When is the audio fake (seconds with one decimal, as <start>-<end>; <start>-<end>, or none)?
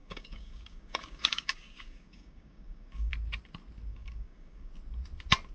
0.0-3.1; 3.9-4.7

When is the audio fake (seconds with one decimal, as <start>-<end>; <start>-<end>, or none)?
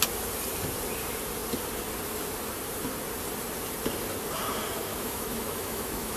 4.9-6.2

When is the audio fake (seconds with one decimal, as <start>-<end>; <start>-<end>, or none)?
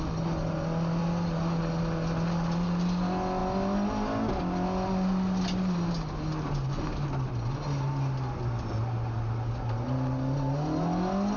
none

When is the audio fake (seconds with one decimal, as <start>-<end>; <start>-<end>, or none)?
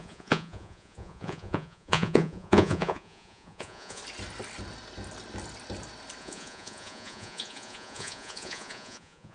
0.0-4.0; 6.2-9.3